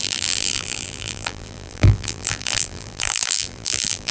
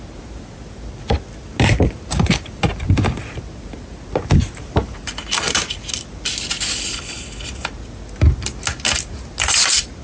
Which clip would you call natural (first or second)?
second